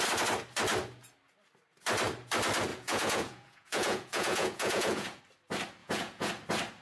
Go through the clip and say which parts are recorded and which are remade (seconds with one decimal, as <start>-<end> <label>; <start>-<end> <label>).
0.0-2.7 recorded; 2.7-5.2 remade; 5.2-5.8 recorded; 5.8-6.3 remade; 6.3-6.8 recorded